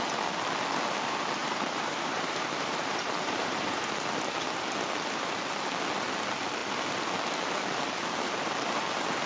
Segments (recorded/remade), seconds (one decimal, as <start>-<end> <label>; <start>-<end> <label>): 0.0-1.4 recorded; 1.4-3.8 remade; 3.8-9.3 recorded

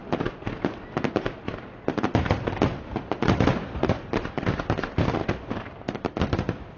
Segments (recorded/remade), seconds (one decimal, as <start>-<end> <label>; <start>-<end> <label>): 0.0-3.5 recorded; 3.5-6.8 remade

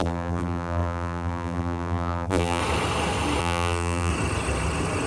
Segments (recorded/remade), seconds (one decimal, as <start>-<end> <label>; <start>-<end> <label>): 0.0-2.6 remade; 2.6-3.4 recorded; 3.4-4.1 remade; 4.1-5.1 recorded